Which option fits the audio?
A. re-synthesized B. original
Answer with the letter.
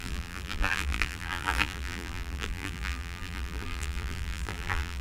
A